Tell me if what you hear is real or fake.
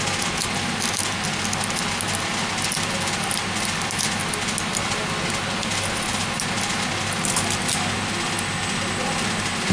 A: real